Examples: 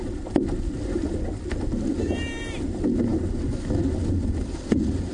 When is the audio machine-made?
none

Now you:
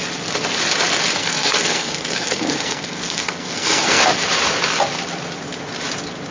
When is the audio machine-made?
1.2-4.0 (codec, SNAC)

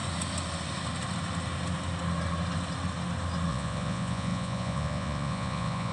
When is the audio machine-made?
3.5-5.9 (vocoder, Vocos)

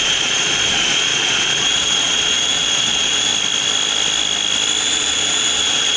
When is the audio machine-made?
0.0-3.3 (vocoder, Vocos); 4.8-6.0